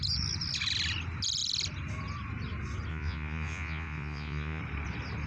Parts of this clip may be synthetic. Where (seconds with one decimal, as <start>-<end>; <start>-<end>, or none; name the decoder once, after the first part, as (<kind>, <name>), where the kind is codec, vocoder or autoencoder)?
2.9-4.6 (vocoder, Vocos)